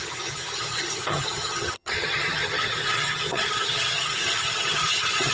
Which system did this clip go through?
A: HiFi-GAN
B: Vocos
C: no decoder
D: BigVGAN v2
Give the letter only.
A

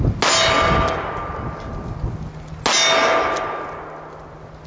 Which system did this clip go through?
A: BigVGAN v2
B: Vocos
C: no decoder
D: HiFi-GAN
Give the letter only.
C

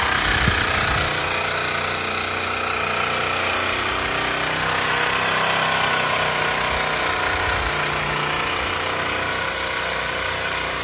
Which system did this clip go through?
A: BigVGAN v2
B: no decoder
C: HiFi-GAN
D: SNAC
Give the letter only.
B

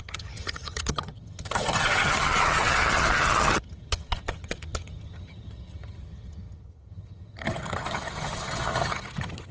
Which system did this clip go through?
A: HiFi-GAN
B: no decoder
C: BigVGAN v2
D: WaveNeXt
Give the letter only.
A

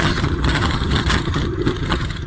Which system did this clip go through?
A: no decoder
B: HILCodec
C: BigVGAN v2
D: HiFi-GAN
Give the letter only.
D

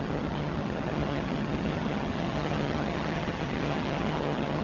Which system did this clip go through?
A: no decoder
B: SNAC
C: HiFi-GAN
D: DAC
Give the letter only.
C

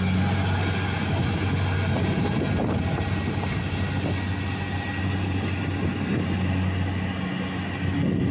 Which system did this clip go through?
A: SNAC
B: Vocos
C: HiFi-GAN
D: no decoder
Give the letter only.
D